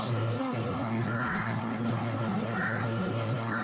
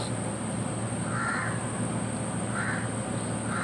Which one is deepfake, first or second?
first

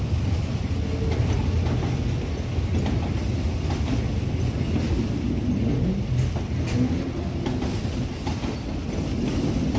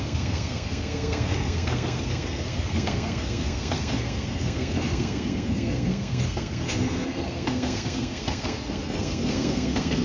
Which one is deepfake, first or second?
second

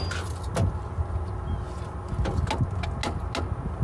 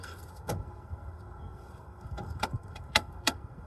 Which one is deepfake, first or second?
second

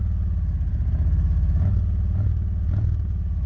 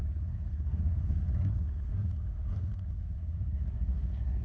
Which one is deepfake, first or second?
second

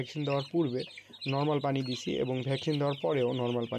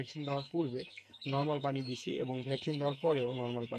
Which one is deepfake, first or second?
second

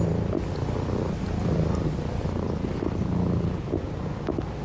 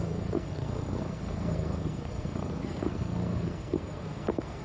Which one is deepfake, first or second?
second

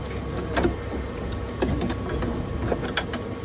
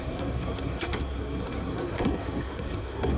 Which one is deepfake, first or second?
second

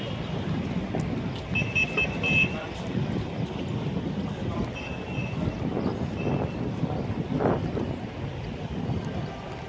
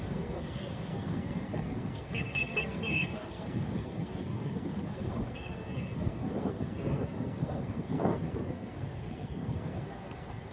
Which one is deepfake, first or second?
second